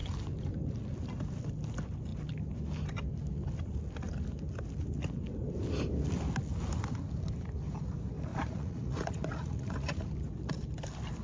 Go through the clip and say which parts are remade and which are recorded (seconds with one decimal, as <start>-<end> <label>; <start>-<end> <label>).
0.0-8.3 recorded; 8.3-10.1 remade; 10.1-11.2 recorded